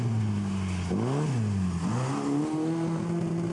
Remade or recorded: recorded